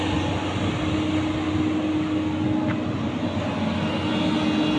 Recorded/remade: recorded